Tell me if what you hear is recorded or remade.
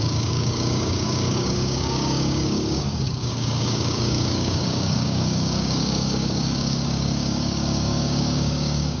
remade